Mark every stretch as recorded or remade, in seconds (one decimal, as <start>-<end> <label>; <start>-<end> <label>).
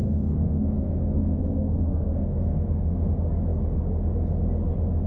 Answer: 0.0-3.1 remade; 3.1-5.1 recorded